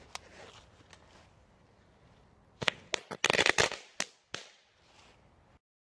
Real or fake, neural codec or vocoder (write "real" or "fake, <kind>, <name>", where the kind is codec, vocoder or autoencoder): real